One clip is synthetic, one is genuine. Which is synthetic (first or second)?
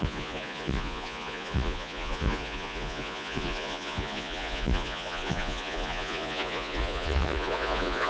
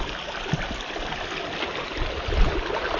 first